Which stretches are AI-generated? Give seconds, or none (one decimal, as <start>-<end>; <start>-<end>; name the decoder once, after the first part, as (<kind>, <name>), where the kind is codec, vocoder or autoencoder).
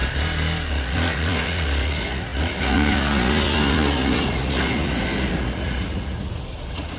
0.7-7.0 (vocoder, Vocos)